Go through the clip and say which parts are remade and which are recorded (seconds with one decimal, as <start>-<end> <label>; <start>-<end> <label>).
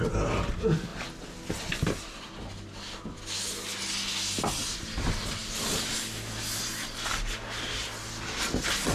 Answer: 0.0-8.9 recorded